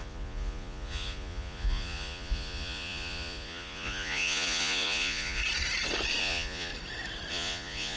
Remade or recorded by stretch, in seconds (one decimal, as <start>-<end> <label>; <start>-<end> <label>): 0.0-5.4 remade; 5.4-6.2 recorded; 6.2-6.7 remade; 6.7-7.3 recorded; 7.3-8.0 remade